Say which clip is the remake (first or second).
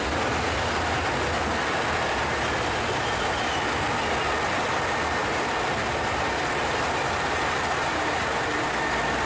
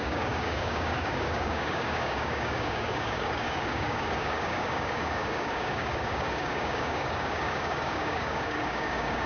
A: second